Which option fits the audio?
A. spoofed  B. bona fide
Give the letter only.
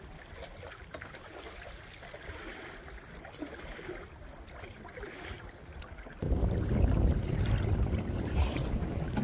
B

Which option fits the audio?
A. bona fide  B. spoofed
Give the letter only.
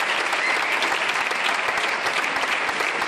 A